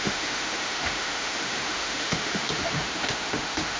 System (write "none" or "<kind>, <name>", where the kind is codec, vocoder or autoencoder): autoencoder, DAC-VAE